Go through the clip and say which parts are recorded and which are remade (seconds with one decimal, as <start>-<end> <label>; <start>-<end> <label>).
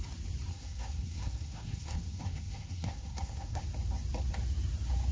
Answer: 0.0-0.5 recorded; 0.5-3.6 remade; 3.6-5.1 recorded